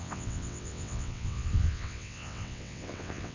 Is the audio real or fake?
fake